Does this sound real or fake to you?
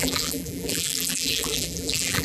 fake